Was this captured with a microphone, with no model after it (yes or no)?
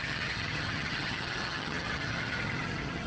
no